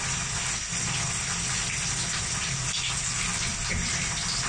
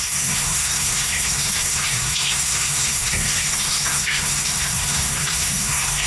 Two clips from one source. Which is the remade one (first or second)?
second